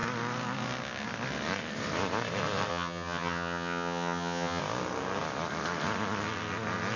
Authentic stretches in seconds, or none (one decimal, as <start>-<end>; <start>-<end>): 0.0-2.7; 4.6-7.0